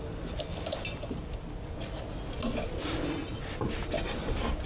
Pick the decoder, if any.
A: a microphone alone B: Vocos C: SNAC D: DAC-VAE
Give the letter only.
A